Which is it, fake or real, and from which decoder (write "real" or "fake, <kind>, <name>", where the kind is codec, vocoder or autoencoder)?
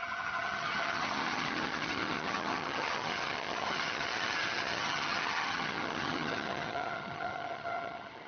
fake, vocoder, HiFi-GAN